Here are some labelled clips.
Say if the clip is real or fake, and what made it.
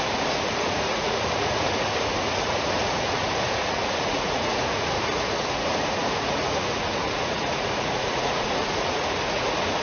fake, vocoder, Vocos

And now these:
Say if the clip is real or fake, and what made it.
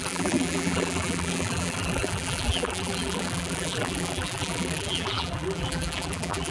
fake, vocoder, BigVGAN v2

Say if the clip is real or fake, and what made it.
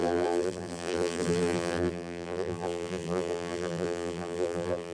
fake, vocoder, BigVGAN v2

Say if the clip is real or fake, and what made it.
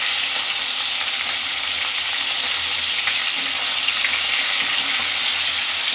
real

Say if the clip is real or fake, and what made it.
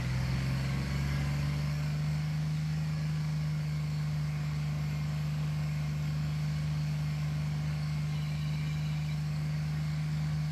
fake, codec, DAC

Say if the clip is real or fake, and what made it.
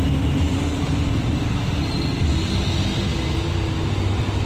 real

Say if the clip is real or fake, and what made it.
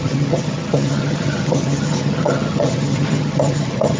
fake, vocoder, HiFi-GAN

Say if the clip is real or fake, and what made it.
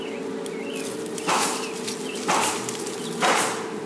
real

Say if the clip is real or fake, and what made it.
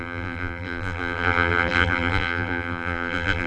fake, vocoder, BigVGAN v2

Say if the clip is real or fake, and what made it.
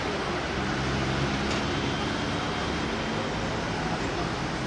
real